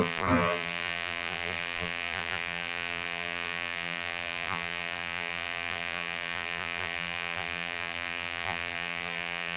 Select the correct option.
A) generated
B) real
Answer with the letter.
A